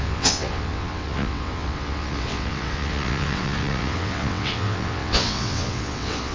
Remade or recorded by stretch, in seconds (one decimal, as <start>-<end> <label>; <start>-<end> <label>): 0.0-6.3 remade